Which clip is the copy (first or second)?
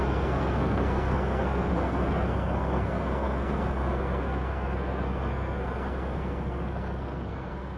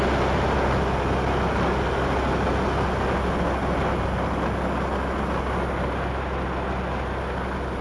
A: first